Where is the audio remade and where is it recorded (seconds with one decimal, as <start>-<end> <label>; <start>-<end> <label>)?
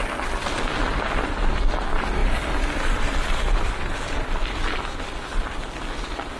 0.0-6.4 recorded